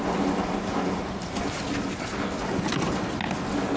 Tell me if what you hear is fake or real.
real